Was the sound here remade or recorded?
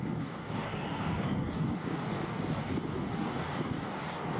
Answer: remade